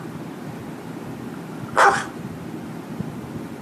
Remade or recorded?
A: recorded